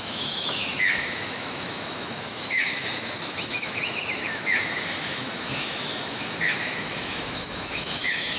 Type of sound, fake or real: fake